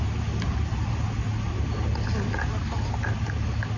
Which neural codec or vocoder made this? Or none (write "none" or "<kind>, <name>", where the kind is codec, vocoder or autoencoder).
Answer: none